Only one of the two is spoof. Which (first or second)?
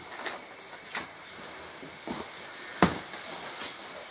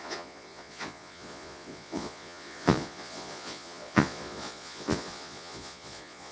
second